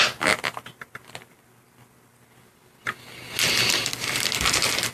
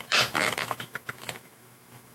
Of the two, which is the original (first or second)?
first